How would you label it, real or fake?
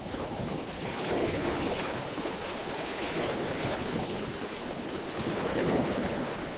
fake